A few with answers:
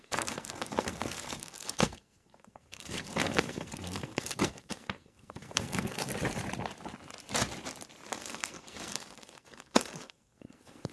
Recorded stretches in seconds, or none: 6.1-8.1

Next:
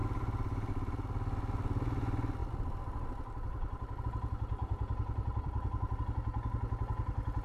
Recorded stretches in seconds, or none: 0.0-2.4; 4.0-4.6; 6.0-7.4

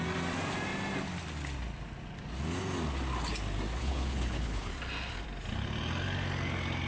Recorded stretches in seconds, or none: 0.0-3.8; 4.7-6.9